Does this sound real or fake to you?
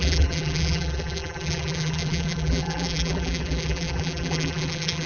fake